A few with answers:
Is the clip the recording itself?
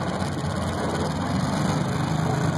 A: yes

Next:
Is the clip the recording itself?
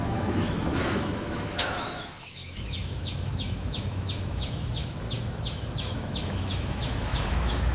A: no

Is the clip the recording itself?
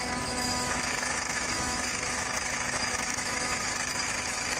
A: no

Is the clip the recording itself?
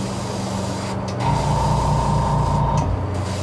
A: yes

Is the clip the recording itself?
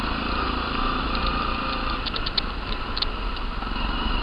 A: yes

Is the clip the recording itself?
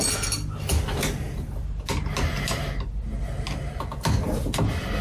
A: yes